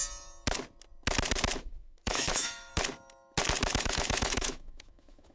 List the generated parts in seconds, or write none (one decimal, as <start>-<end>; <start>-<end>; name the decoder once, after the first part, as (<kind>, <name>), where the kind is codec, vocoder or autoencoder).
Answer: 1.6-2.7 (autoencoder, DAC-VAE); 3.8-5.3